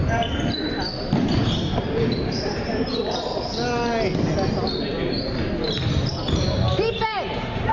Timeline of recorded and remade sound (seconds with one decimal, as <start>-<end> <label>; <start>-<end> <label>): 0.0-2.9 remade; 2.9-4.5 recorded; 4.5-7.7 remade